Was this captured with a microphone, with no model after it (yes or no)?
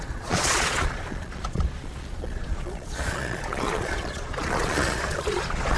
no